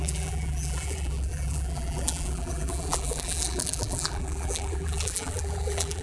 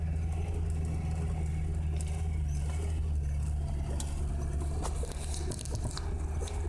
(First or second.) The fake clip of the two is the first